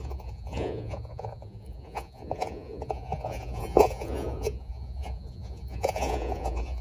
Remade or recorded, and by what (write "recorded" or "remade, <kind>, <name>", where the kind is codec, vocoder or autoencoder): remade, vocoder, Vocos